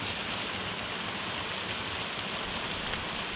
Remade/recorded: recorded